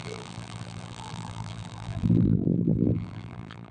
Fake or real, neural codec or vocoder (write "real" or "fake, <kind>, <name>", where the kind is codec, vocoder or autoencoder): fake, vocoder, BigVGAN v2